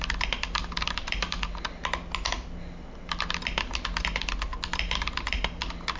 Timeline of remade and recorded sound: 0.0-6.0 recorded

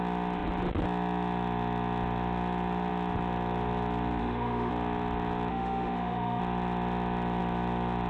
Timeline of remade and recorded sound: 0.0-4.2 recorded; 4.2-4.7 remade; 4.7-5.5 recorded; 5.5-6.4 remade; 6.4-8.1 recorded

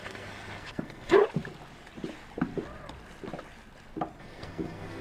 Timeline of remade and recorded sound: 0.0-1.2 remade; 1.2-4.2 recorded; 4.2-5.0 remade

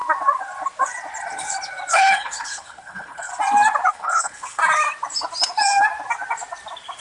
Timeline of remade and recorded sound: 0.0-1.9 recorded; 1.9-3.3 remade; 3.3-3.9 recorded; 3.9-4.6 remade; 4.6-7.0 recorded

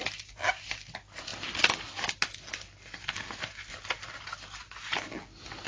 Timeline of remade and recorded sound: 0.0-5.7 recorded